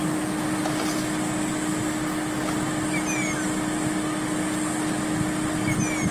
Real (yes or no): yes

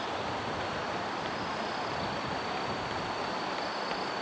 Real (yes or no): no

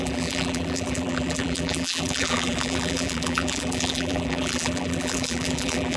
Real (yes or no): no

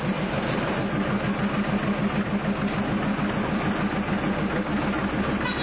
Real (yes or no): yes